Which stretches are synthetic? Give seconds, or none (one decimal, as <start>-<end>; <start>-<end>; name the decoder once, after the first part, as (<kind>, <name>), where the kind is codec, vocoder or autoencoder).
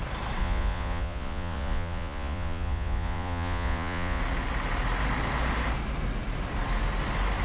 0.4-4.2 (vocoder, Vocos)